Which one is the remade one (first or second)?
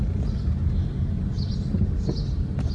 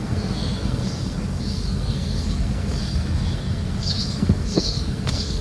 second